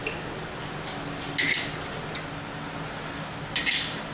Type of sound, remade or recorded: recorded